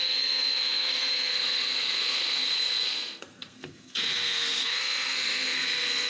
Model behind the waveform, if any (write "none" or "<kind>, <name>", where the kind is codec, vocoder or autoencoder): codec, SNAC